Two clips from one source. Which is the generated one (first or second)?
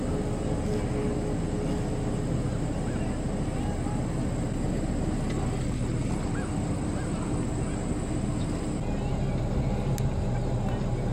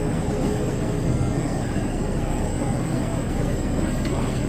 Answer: second